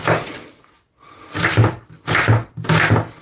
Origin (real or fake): real